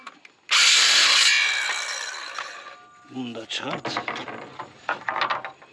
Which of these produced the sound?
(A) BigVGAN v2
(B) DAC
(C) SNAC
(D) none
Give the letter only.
D